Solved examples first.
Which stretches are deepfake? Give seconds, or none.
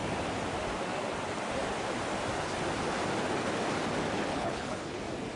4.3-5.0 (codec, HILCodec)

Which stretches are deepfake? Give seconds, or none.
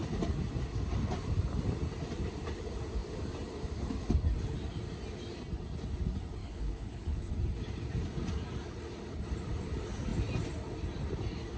6.4-7.3 (codec, HILCodec)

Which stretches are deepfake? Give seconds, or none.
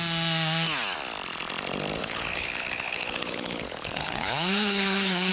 2.0-5.3 (codec, HILCodec)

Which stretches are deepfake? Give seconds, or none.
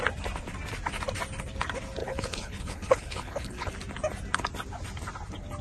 2.0-3.7 (codec, HILCodec)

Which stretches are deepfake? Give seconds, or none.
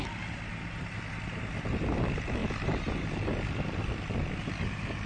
none